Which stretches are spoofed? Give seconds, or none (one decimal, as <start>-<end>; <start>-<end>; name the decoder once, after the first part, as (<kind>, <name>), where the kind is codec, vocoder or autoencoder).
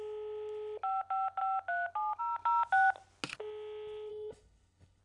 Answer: 4.1-5.0 (codec, HILCodec)